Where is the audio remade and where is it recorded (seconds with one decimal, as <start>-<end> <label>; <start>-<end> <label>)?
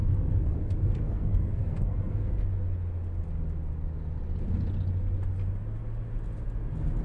0.0-2.3 remade; 2.3-7.0 recorded